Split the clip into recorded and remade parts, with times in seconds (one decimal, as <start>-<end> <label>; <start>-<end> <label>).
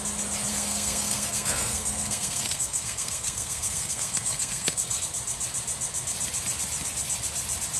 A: 0.0-0.5 recorded; 0.5-5.0 remade; 5.0-7.8 recorded